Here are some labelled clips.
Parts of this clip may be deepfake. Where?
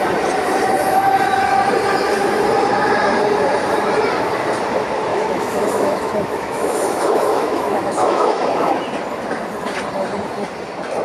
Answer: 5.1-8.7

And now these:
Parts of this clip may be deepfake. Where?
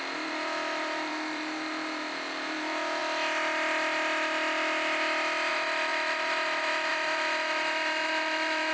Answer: 0.0-3.0; 5.5-8.7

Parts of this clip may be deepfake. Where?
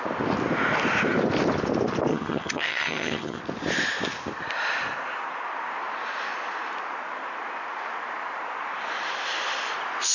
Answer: 2.1-3.4